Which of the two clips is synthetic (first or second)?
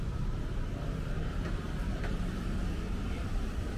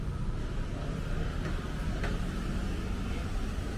first